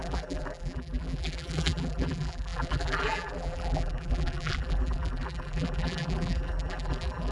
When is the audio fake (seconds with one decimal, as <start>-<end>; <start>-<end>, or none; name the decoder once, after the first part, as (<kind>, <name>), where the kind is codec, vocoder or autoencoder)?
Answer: 0.0-7.3 (vocoder, BigVGAN v2)